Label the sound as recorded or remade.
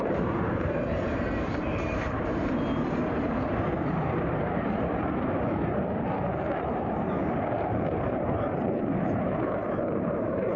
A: remade